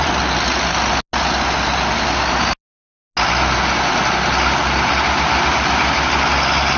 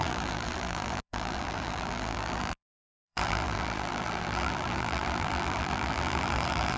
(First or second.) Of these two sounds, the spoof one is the second